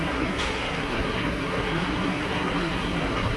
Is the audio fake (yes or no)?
yes